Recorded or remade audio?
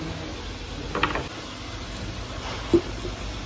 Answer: recorded